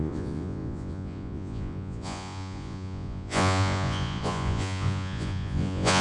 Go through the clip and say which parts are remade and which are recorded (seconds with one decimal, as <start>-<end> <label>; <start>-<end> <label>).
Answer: 0.0-6.0 remade